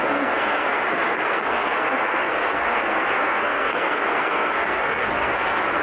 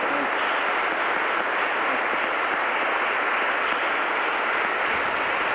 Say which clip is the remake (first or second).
first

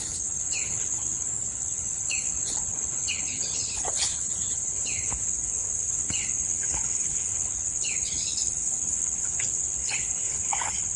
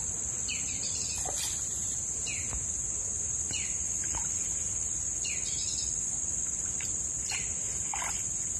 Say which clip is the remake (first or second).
first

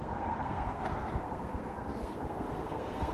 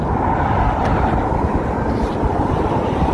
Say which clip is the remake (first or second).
first